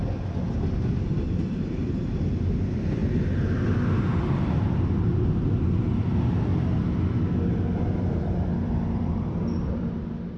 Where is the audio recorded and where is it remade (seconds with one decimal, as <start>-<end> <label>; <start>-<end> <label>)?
0.0-3.0 remade; 3.0-4.2 recorded; 4.2-6.5 remade; 6.5-7.4 recorded; 7.4-10.4 remade